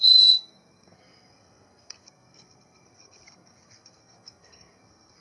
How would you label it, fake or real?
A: fake